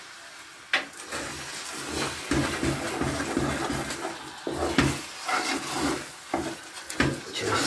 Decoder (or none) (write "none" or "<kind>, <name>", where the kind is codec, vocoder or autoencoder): none